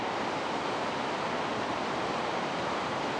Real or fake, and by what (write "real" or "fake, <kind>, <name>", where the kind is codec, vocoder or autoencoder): fake, vocoder, BigVGAN v2